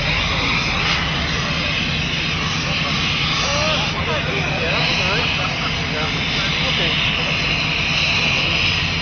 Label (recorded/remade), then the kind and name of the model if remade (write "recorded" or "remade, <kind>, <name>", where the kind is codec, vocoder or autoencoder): recorded